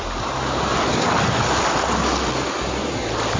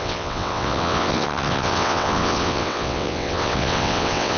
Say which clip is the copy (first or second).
second